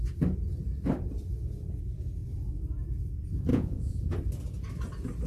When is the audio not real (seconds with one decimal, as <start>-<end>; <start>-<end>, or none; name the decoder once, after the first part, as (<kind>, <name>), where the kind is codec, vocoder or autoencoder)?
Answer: 3.5-4.1 (vocoder, Vocos)